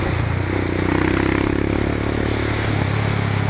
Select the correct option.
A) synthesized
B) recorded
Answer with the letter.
B